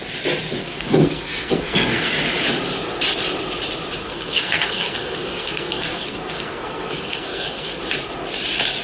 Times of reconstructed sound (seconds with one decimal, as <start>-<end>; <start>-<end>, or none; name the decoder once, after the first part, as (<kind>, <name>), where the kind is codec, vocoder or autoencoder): 0.6-2.1 (codec, SNAC); 4.0-7.8